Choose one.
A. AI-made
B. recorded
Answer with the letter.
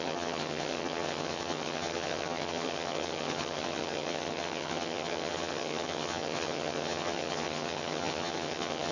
A